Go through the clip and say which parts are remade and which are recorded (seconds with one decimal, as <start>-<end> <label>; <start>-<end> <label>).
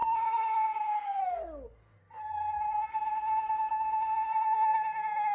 0.0-1.2 remade; 1.2-2.9 recorded; 2.9-4.3 remade; 4.3-5.3 recorded